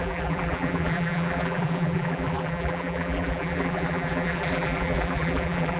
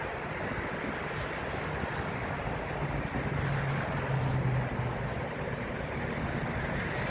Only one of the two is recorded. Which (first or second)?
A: second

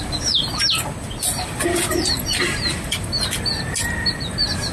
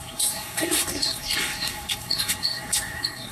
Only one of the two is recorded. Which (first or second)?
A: first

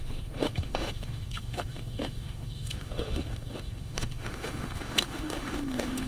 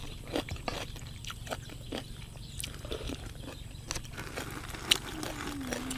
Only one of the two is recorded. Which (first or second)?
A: second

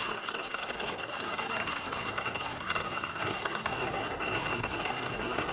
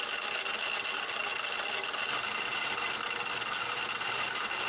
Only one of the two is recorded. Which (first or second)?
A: second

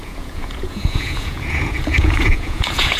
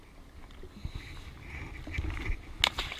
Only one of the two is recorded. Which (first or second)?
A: second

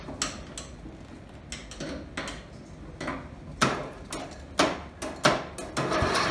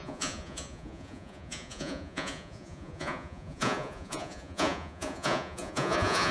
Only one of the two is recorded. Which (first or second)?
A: first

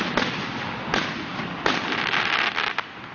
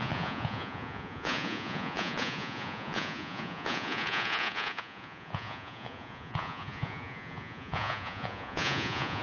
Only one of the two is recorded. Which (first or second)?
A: first